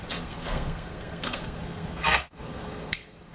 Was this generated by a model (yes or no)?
yes